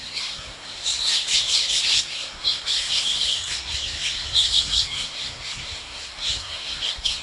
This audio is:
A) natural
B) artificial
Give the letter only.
B